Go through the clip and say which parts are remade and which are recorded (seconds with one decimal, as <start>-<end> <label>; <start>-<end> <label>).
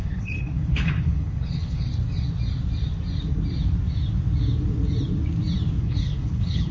0.0-1.9 remade; 1.9-5.8 recorded; 5.8-6.7 remade